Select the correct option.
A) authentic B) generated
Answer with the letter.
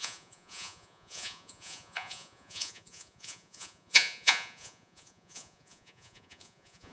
B